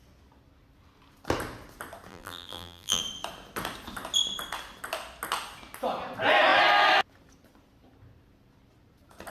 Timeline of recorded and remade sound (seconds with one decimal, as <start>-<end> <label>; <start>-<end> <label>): 0.0-2.1 recorded; 2.1-3.0 remade; 3.0-9.3 recorded